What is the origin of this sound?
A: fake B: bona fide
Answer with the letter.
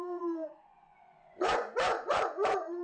A